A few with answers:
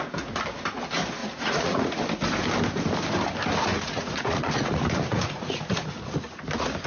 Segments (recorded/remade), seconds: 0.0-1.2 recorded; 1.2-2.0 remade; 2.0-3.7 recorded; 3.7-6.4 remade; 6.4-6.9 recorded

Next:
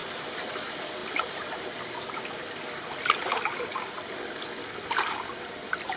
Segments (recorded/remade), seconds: 0.0-6.0 recorded

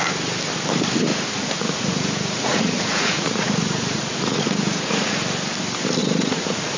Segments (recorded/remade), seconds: 0.0-1.1 recorded; 1.1-5.2 remade; 5.2-6.0 recorded; 6.0-6.8 remade

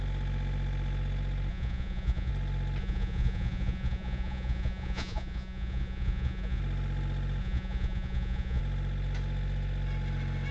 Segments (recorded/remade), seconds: 0.0-1.5 recorded; 1.5-2.3 remade; 2.3-2.8 recorded; 2.8-6.6 remade; 6.6-7.4 recorded; 7.4-8.6 remade; 8.6-10.5 recorded

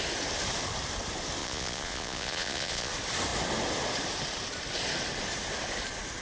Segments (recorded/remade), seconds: 0.0-1.4 recorded; 1.4-2.9 remade; 2.9-6.2 recorded